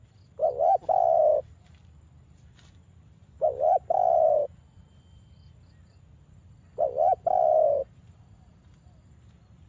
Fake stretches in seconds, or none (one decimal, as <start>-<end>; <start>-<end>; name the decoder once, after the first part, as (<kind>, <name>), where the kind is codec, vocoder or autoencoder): 0.4-0.9 (vocoder, BigVGAN v2); 2.8-7.4